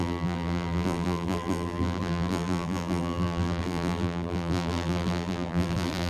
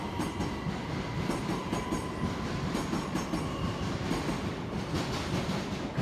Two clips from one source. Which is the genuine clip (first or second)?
second